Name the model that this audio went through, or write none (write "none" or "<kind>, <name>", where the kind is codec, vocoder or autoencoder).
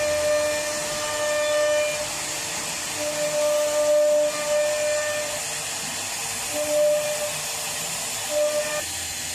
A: none